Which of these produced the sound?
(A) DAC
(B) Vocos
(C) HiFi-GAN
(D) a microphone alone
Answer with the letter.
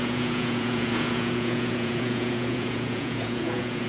B